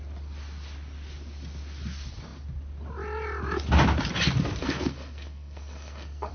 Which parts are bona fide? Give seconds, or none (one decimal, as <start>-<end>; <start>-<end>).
0.0-4.6